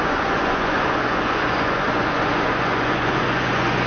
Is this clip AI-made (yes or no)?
yes